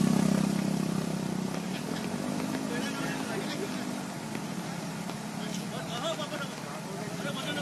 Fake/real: real